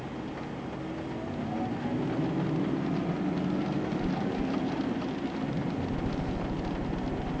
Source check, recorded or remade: recorded